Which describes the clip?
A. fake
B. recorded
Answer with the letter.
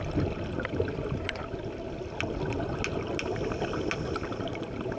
B